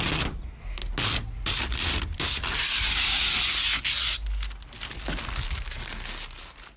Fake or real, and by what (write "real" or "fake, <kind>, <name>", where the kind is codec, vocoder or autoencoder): real